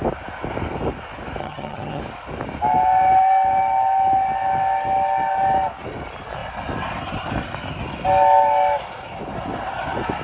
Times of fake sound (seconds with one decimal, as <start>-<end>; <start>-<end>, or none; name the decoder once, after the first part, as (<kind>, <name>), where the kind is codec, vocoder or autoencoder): 1.4-2.0 (vocoder, HiFi-GAN)